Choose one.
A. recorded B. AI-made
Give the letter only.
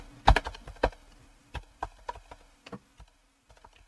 A